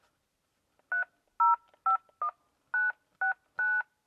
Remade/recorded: recorded